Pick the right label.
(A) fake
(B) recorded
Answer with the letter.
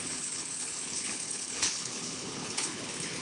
A